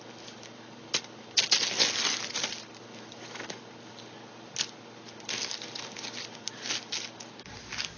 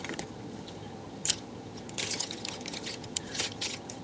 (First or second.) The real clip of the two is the first